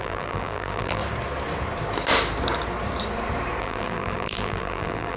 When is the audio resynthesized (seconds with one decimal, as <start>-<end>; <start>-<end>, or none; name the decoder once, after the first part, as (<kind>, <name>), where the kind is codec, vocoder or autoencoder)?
0.0-1.0 (vocoder, BigVGAN v2); 3.6-5.2